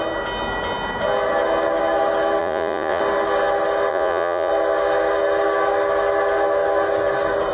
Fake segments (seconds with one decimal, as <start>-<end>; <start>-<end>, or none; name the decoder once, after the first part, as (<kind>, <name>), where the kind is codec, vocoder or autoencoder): 2.4-3.0 (vocoder, Vocos); 3.9-4.5